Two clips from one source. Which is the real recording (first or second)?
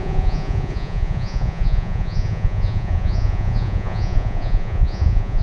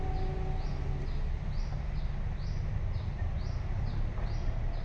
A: second